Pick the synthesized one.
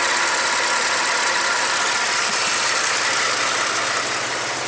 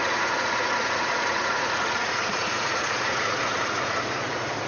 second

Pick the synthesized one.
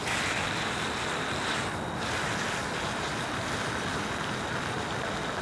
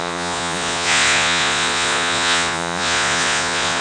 second